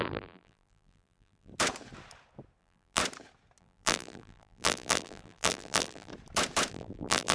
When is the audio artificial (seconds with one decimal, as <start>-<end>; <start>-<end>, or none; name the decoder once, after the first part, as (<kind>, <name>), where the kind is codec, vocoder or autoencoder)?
0.0-1.5 (vocoder, BigVGAN v2); 2.6-3.0; 3.6-6.1; 6.7-7.3